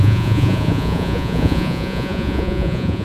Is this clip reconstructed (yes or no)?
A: yes